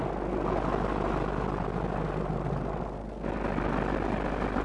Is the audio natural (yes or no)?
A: yes